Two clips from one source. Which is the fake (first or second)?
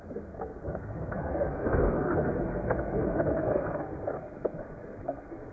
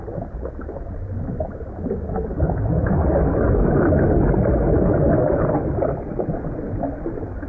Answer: first